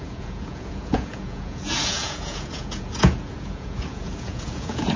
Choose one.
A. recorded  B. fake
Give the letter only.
B